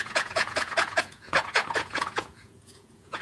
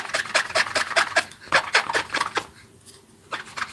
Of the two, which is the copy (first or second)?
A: first